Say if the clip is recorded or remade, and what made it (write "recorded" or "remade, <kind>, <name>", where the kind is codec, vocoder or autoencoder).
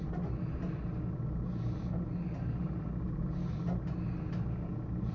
recorded